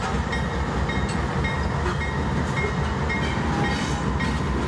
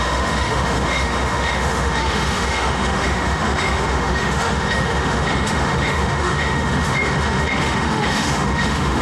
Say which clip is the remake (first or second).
second